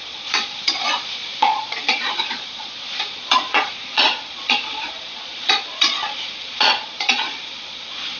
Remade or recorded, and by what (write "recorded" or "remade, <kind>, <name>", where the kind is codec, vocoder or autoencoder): remade, vocoder, Vocos